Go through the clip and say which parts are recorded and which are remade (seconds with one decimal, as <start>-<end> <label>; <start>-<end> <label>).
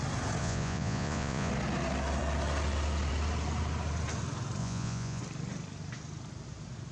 0.0-0.4 recorded; 0.4-1.5 remade; 1.5-4.6 recorded; 4.6-5.2 remade; 5.2-6.9 recorded